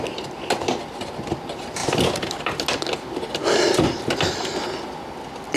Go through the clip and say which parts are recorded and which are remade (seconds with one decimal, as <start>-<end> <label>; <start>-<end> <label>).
0.0-5.6 recorded